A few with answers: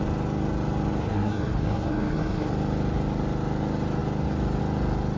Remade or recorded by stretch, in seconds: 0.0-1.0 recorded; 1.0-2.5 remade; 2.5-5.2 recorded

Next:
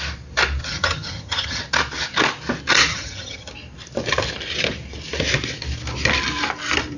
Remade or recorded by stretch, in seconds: 0.0-0.6 recorded; 0.6-1.6 remade; 1.6-2.9 recorded; 2.9-3.5 remade; 3.5-7.0 recorded

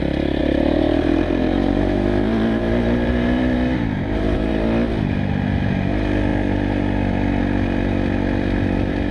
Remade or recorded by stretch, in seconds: 0.0-0.4 recorded; 0.4-4.5 remade; 4.5-9.1 recorded